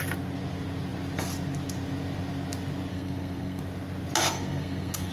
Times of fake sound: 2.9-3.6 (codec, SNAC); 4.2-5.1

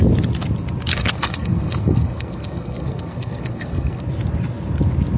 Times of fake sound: 0.9-4.0 (codec, SNAC)